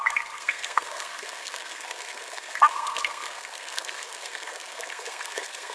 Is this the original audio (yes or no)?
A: no